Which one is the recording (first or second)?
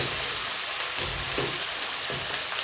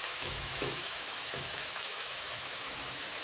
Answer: first